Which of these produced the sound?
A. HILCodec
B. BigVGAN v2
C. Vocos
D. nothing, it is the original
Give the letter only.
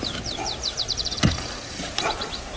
D